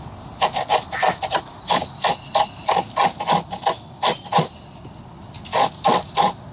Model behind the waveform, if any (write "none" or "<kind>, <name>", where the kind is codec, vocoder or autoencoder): none